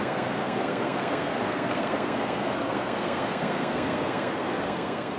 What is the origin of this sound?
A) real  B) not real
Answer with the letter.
B